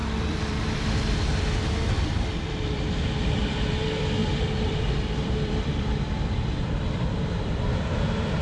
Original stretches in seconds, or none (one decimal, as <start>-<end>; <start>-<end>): none